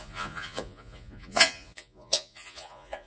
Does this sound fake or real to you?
fake